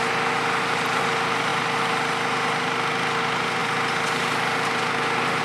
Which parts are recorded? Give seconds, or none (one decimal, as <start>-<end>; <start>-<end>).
0.0-5.4